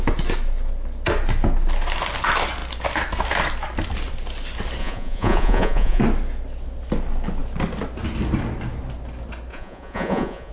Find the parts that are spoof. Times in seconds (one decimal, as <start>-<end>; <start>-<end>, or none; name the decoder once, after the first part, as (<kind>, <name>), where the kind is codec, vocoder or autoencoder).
4.8-6.0 (vocoder, Vocos); 9.5-10.5